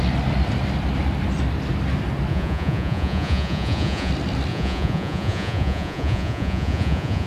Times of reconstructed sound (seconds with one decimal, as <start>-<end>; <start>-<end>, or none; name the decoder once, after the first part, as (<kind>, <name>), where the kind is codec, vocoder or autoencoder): 2.3-4.1 (vocoder, Vocos); 4.5-7.3